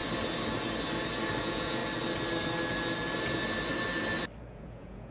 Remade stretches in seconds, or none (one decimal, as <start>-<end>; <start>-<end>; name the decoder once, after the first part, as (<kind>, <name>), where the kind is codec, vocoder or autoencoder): 1.4-1.8 (vocoder, Vocos); 4.4-5.1